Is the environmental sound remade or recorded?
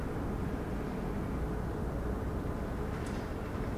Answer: recorded